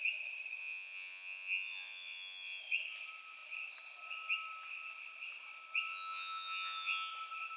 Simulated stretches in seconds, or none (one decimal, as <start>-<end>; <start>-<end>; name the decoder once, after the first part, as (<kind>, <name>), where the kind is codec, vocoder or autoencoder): 0.6-2.6 (vocoder, Vocos); 5.9-7.1